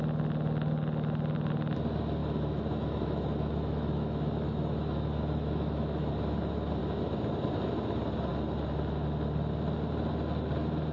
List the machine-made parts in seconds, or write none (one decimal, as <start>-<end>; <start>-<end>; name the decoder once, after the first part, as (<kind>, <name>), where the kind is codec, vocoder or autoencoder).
2.2-6.1 (autoencoder, DAC-VAE)